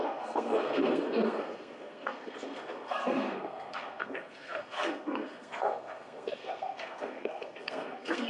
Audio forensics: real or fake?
fake